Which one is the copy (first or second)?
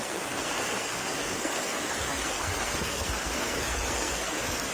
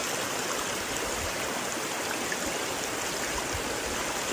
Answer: first